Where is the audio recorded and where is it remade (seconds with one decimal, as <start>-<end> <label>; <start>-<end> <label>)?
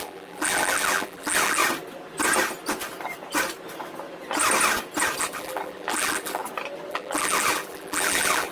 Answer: 0.0-1.6 remade; 1.6-5.2 recorded; 5.2-6.4 remade; 6.4-6.9 recorded; 6.9-8.5 remade